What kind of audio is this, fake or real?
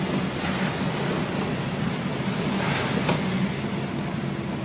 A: real